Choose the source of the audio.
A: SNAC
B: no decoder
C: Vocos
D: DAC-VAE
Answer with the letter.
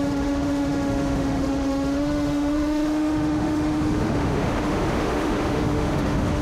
D